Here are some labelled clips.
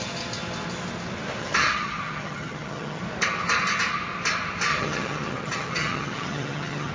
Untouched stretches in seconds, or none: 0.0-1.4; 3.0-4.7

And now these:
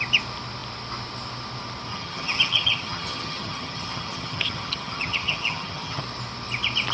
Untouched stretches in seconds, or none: 0.0-1.9; 6.0-6.9

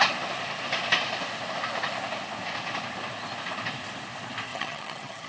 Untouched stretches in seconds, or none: 0.0-4.5